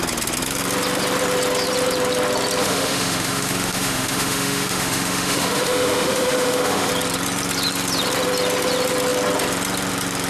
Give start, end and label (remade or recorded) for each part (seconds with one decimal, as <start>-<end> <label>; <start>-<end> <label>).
0.0-2.6 recorded; 2.6-6.9 remade; 6.9-10.3 recorded